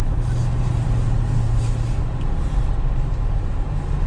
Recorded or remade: recorded